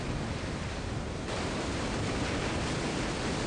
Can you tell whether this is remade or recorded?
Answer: recorded